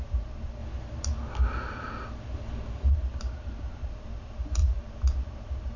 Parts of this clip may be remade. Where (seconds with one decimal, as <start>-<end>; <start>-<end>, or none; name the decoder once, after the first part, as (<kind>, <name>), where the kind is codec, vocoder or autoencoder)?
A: 0.0-0.6 (vocoder, BigVGAN v2); 2.9-5.8